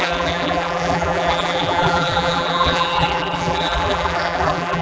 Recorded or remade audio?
remade